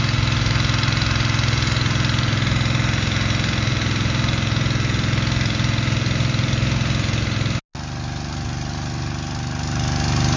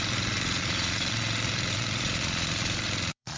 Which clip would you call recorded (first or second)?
first